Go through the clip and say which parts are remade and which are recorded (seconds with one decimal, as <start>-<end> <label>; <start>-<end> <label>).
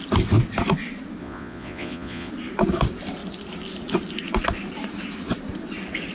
0.0-1.2 recorded; 1.2-2.3 remade; 2.3-6.1 recorded